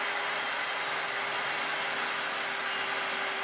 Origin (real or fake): real